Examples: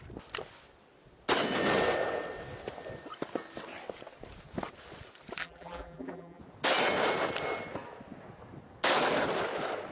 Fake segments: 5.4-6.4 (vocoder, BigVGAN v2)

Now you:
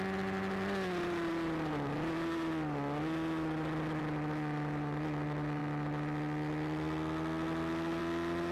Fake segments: none

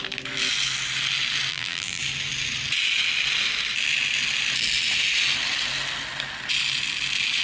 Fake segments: 1.5-2.0 (vocoder, BigVGAN v2)